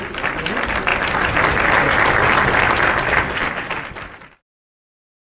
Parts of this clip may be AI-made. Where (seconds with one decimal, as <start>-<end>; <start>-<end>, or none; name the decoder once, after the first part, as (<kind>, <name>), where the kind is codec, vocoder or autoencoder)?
none